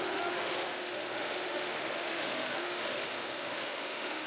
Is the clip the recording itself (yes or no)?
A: no